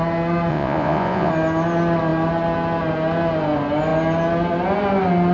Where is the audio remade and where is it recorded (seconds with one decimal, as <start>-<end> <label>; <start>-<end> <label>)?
0.0-0.5 recorded; 0.5-1.3 remade; 1.3-5.3 recorded